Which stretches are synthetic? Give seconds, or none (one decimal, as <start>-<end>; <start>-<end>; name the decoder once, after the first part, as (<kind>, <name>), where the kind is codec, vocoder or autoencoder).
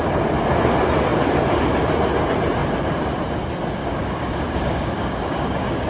3.8-5.9 (codec, DAC)